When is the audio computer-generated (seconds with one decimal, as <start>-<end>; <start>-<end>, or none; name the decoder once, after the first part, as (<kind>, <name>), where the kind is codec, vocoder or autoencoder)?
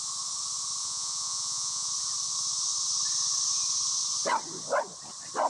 0.8-1.9 (vocoder, Vocos)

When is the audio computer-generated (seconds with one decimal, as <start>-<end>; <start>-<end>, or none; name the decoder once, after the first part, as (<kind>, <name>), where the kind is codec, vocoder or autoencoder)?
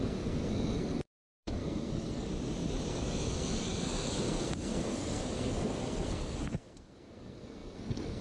0.0-2.3 (codec, SNAC); 2.9-8.2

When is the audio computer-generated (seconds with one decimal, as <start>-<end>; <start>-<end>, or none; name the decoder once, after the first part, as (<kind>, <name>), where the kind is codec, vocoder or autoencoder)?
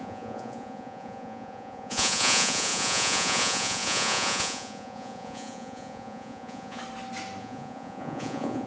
0.0-6.8 (vocoder, Vocos); 7.4-8.7